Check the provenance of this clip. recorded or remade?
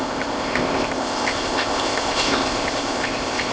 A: remade